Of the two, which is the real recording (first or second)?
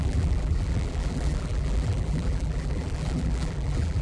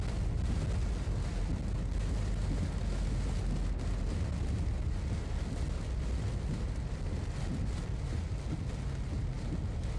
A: second